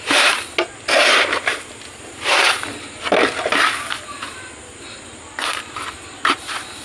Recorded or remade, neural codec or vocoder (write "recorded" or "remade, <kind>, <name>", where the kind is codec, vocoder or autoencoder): recorded